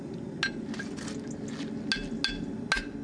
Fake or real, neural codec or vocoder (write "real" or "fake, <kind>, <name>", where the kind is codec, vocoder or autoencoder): real